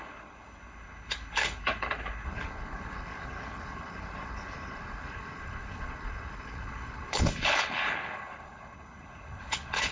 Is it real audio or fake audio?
fake